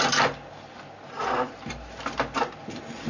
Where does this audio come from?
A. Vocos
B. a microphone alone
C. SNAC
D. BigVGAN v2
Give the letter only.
B